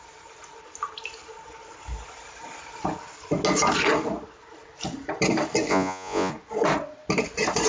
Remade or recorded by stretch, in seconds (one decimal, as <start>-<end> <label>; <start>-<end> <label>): 0.0-5.7 recorded; 5.7-6.3 remade; 6.3-7.7 recorded